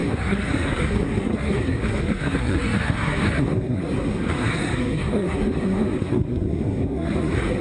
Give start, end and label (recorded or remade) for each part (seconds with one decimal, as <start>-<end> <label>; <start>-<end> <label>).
0.0-7.6 remade